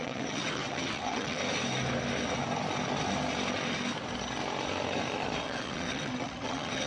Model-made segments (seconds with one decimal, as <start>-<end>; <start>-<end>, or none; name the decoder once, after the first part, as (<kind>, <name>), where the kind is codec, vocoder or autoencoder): 0.0-1.4 (vocoder, WaveNeXt); 5.4-6.9